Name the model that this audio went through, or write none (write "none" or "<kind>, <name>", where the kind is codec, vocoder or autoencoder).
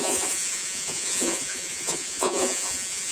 vocoder, Vocos